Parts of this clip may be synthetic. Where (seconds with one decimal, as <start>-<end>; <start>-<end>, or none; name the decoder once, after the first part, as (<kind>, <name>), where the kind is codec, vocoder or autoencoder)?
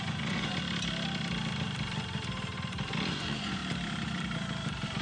0.0-0.5 (vocoder, Vocos); 3.1-3.6